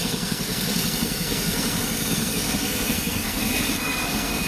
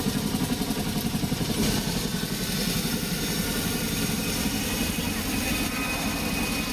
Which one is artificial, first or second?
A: first